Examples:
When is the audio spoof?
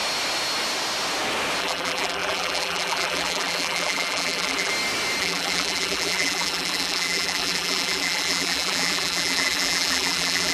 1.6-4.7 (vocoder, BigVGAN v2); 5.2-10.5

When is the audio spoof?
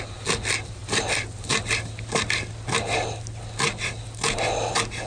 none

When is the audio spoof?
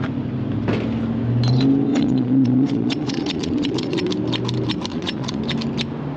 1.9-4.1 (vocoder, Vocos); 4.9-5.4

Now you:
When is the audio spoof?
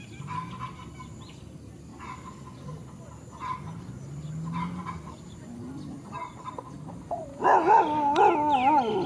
none